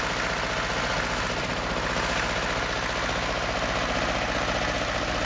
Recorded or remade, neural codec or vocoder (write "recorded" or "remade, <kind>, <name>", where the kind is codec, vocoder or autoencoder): recorded